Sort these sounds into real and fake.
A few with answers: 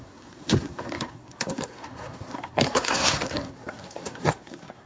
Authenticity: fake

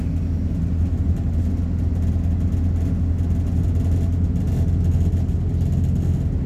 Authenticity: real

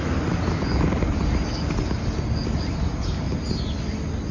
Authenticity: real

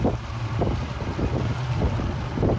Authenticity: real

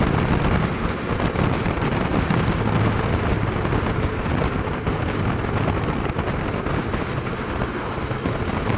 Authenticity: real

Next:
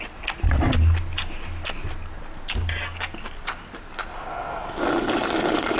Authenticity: real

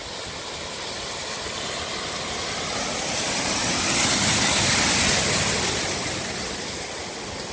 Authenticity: real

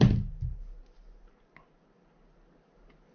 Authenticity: real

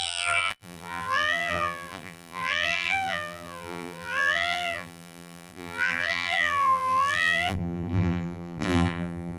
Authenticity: fake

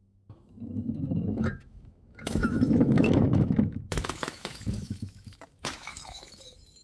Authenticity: fake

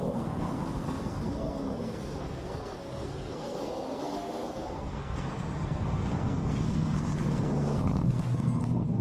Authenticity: fake